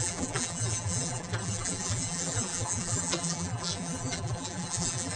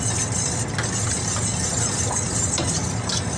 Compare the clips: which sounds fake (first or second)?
first